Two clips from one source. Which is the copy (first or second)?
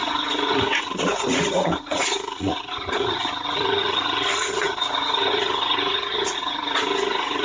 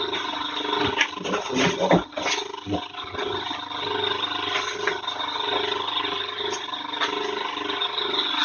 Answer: first